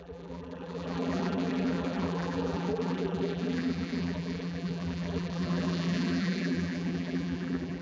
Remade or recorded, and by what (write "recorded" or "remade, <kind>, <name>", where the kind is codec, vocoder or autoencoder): remade, vocoder, BigVGAN v2